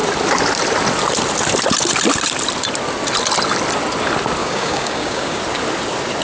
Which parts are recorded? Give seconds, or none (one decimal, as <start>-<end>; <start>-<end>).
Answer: 0.0-4.4; 5.4-6.2